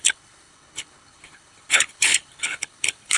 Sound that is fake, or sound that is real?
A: fake